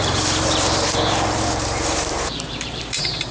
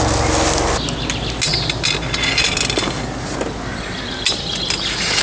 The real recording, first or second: second